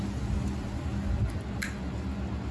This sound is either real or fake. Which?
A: real